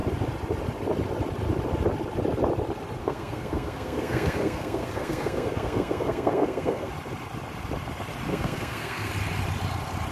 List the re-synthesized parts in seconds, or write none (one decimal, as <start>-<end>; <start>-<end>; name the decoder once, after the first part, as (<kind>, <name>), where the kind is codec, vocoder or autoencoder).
3.0-6.9 (codec, SNAC); 8.3-9.1